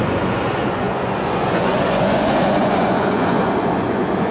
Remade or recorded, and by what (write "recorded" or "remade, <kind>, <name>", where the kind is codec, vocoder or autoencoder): remade, vocoder, Vocos